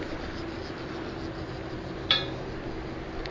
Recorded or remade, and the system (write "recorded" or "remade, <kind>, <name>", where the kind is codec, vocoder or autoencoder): recorded